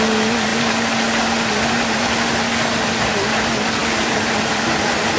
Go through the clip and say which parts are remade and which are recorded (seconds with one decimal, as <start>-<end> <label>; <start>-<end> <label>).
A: 0.0-5.2 recorded